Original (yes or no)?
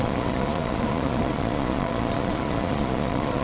no